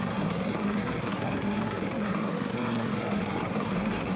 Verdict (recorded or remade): remade